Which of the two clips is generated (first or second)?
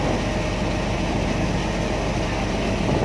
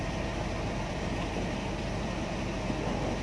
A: second